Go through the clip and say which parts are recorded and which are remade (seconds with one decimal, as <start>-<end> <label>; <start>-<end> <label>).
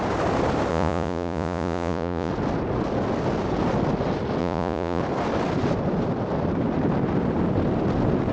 0.0-0.7 recorded; 0.7-2.3 remade; 2.3-4.4 recorded; 4.4-5.0 remade; 5.0-8.3 recorded